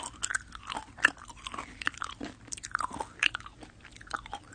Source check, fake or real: real